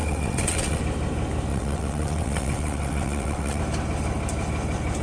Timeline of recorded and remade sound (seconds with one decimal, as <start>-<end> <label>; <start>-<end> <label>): 0.0-0.8 remade; 0.8-1.5 recorded; 1.5-3.6 remade; 3.6-5.0 recorded

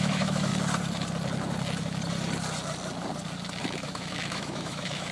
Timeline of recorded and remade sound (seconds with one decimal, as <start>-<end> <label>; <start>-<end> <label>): 0.0-0.5 remade; 0.5-3.6 recorded; 3.6-5.1 remade